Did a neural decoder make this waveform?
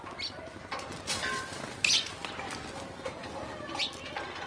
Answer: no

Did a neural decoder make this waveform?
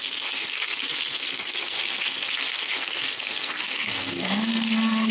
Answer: yes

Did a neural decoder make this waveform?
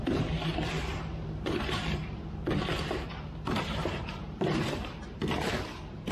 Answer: yes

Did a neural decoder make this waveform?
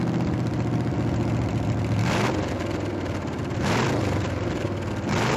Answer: no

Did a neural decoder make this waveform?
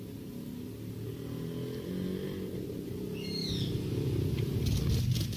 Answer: no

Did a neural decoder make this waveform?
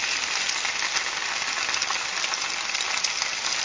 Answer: no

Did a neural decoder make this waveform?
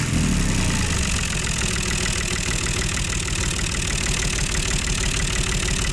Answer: no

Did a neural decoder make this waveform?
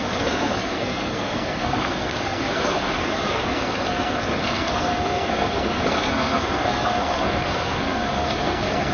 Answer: yes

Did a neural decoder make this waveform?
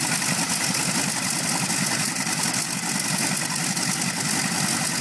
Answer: no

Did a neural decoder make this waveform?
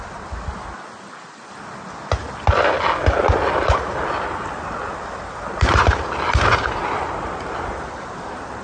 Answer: no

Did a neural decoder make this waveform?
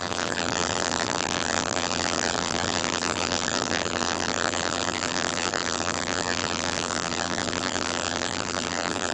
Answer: yes